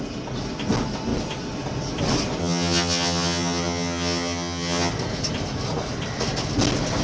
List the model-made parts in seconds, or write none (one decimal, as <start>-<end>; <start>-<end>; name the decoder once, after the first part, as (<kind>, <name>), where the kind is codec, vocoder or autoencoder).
2.4-4.9 (vocoder, HiFi-GAN)